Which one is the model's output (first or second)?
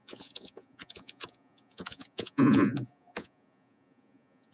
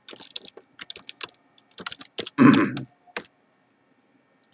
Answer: first